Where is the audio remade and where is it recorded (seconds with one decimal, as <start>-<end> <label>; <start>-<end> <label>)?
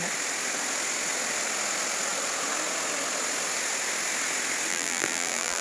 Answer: 0.0-4.7 recorded; 4.7-5.6 remade